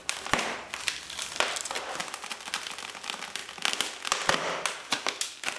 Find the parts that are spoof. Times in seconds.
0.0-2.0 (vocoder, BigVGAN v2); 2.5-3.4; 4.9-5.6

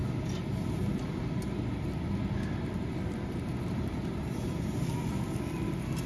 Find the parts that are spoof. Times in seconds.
2.8-4.7 (vocoder, BigVGAN v2)

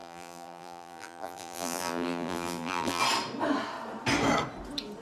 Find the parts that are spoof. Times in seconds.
0.0-3.0 (vocoder, BigVGAN v2)

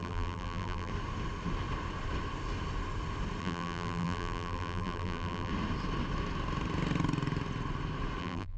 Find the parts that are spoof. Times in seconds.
0.0-0.9 (vocoder, BigVGAN v2); 3.4-5.5; 8.2-8.6